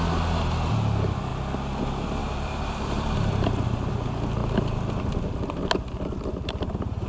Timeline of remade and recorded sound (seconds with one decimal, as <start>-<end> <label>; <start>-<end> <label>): 0.0-2.2 recorded; 2.2-3.9 remade; 3.9-7.1 recorded